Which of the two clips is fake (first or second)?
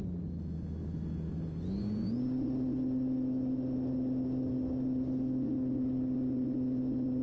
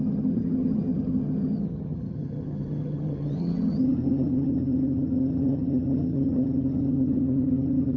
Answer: second